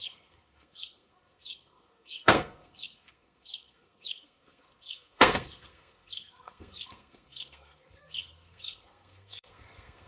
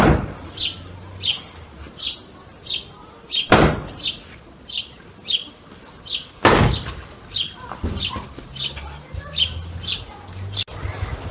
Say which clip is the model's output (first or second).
first